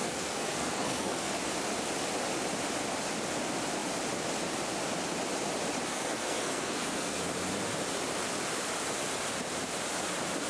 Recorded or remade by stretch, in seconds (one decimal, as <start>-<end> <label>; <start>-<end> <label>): 0.0-1.3 remade; 1.3-5.9 recorded; 5.9-7.2 remade; 7.2-10.5 recorded